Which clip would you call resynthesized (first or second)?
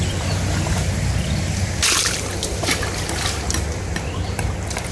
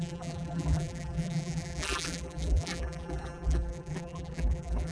second